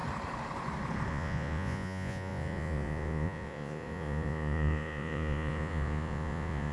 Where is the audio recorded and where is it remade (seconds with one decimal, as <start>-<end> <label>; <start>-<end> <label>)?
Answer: 0.0-1.1 recorded; 1.1-6.7 remade